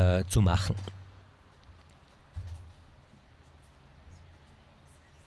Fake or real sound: real